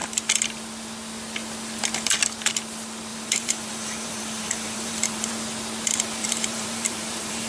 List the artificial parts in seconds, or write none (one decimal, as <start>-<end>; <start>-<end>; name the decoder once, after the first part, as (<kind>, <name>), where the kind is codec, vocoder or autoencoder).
3.1-5.3 (vocoder, BigVGAN v2); 6.2-7.5